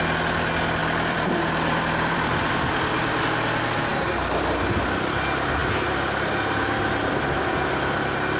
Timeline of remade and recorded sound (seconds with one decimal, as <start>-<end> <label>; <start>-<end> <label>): 0.0-0.8 recorded; 0.8-3.2 remade; 3.2-3.9 recorded; 3.9-4.4 remade; 4.4-8.4 recorded

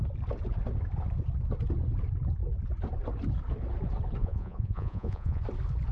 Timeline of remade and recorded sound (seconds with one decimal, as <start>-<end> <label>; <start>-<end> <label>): 0.0-4.2 recorded; 4.2-5.4 remade; 5.4-5.9 recorded

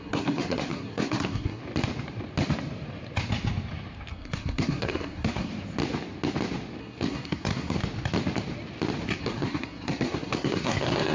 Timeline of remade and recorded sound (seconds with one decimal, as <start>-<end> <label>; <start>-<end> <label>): 0.0-1.6 remade; 1.6-4.1 recorded; 4.1-5.5 remade; 5.5-6.8 recorded; 6.8-7.8 remade; 7.8-9.2 recorded; 9.2-11.1 remade

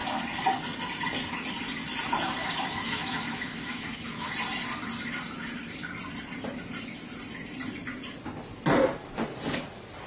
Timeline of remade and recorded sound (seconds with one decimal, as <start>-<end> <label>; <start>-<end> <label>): 0.0-2.4 recorded; 2.4-4.3 remade; 4.3-10.1 recorded

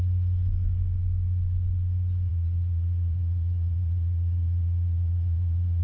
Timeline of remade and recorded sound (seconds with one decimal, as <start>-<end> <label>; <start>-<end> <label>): 0.0-2.3 recorded; 2.3-5.8 remade

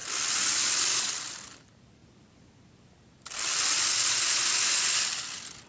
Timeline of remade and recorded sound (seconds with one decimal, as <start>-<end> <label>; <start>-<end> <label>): 0.0-5.7 recorded

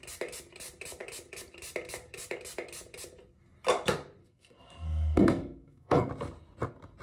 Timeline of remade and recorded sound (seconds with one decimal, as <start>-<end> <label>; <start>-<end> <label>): 0.0-4.2 recorded; 4.2-6.1 remade; 6.1-7.0 recorded